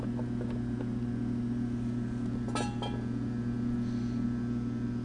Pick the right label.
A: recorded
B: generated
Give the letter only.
A